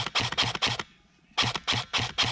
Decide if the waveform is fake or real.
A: real